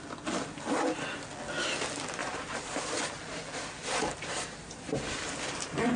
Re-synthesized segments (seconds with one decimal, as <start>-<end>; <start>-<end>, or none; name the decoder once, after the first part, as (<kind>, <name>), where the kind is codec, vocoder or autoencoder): 2.2-2.8 (vocoder, BigVGAN v2); 4.1-6.0

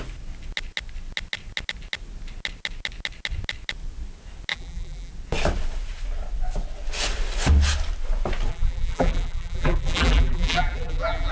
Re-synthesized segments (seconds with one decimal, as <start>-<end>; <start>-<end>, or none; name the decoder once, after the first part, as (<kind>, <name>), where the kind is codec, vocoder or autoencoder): 4.5-5.1 (vocoder, BigVGAN v2); 8.5-11.3

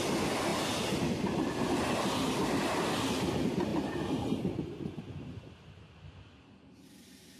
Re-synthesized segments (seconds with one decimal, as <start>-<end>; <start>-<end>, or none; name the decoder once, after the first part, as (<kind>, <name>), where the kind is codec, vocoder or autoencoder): none

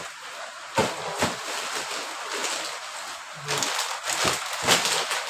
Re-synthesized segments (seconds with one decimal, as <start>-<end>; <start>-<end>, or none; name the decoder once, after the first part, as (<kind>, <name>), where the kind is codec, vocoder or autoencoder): none

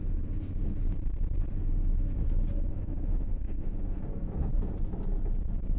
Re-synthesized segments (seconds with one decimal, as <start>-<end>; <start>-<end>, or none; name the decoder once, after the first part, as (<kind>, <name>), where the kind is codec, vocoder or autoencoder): 2.7-4.0 (autoencoder, DAC-VAE)

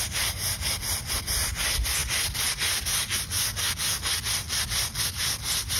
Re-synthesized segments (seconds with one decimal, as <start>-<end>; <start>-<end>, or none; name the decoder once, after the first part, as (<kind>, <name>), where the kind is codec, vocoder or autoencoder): none